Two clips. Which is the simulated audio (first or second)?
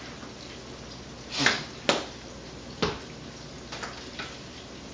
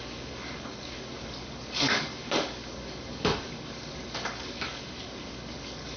second